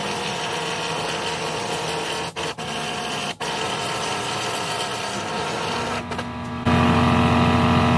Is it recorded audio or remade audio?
recorded